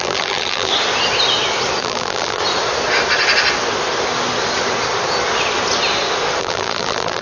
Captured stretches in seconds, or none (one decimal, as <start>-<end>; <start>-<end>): 0.7-1.8; 2.4-6.4